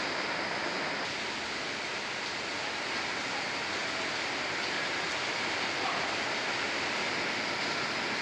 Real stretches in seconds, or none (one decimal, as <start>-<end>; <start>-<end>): 0.0-8.2